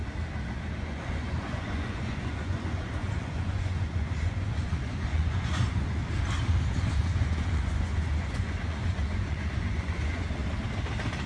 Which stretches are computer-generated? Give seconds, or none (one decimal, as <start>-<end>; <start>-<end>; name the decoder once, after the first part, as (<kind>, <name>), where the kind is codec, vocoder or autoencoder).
0.8-6.0 (vocoder, Vocos); 6.9-10.4

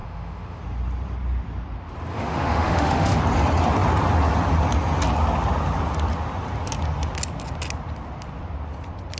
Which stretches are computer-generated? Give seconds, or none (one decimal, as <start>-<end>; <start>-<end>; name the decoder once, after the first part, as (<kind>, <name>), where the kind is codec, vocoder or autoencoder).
0.0-0.6 (autoencoder, DAC-VAE); 2.1-3.2

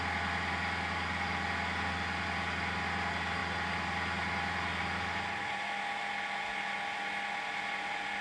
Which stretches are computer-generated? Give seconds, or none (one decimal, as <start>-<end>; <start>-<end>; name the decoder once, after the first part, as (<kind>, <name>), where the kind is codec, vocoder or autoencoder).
none

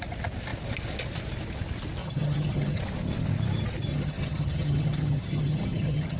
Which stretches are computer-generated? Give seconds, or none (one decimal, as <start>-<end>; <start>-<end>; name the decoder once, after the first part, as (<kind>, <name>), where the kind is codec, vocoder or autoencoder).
2.0-2.8 (vocoder, HiFi-GAN); 3.9-6.2

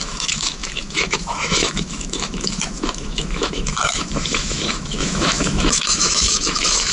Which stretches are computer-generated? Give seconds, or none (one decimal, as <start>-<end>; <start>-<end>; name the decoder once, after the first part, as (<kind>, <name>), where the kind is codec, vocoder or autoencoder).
0.0-6.9 (autoencoder, DAC-VAE)

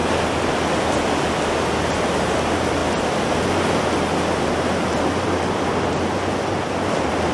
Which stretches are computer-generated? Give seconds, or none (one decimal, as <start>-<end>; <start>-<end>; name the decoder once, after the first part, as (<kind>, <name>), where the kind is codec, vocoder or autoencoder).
none